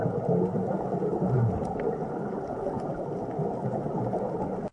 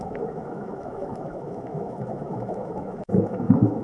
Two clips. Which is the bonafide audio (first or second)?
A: first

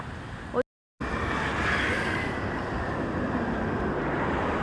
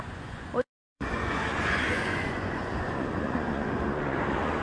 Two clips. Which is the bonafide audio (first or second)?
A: first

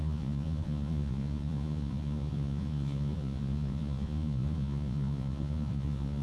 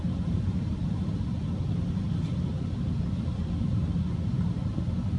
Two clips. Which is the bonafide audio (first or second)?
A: second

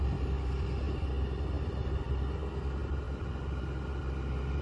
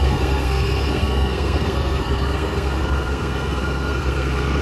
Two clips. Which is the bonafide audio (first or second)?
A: first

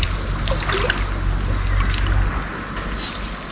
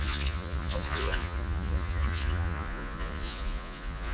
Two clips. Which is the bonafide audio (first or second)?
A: first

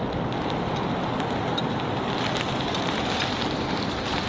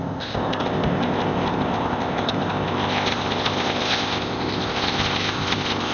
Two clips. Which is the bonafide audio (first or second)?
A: first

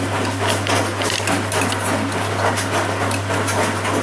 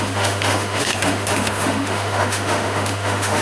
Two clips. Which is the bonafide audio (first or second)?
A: first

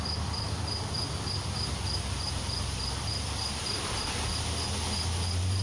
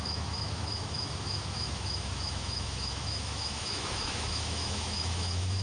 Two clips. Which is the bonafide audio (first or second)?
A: first